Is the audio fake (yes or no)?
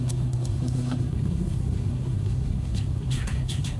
yes